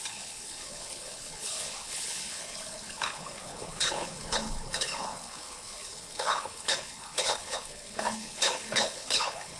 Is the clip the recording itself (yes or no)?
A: no